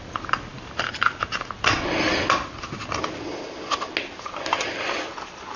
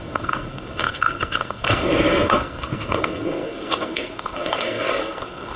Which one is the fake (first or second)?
second